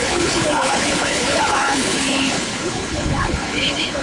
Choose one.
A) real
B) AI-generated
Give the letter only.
B